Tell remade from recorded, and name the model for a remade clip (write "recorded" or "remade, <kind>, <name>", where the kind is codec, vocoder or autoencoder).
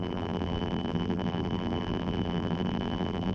remade, vocoder, BigVGAN v2